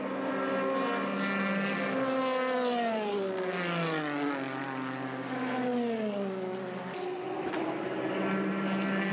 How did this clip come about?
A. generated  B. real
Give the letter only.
B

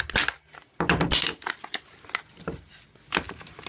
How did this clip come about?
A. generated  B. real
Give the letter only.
B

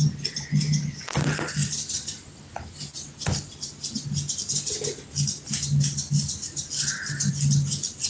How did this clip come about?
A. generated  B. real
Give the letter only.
B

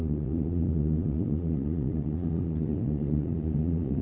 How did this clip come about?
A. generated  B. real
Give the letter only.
A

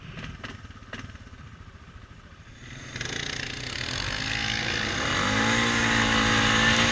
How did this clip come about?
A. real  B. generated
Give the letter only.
A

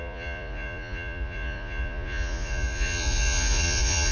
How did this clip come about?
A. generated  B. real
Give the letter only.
A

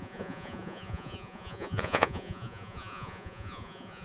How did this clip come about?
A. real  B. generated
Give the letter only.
B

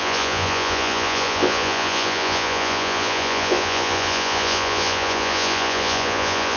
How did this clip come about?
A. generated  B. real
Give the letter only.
A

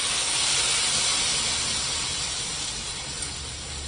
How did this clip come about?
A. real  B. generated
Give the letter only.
A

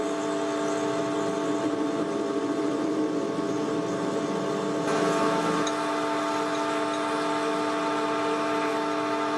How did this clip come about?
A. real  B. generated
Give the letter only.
A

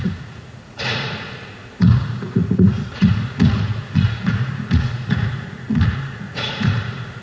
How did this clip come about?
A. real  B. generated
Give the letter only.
B